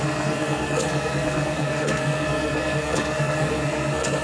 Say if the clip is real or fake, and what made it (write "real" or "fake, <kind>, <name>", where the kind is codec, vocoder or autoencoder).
fake, codec, SNAC